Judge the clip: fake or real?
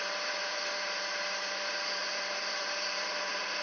fake